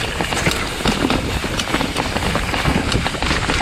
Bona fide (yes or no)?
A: no